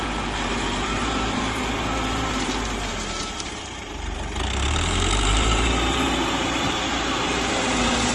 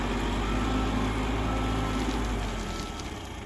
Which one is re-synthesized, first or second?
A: first